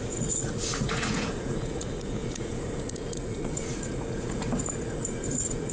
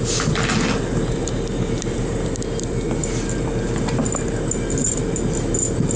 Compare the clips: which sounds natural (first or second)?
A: second